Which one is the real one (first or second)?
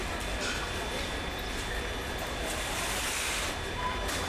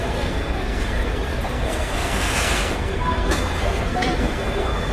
first